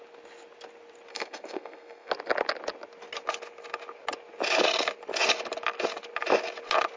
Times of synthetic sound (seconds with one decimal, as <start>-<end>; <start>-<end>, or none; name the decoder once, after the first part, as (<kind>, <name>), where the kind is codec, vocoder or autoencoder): 1.1-2.1 (codec, SNAC)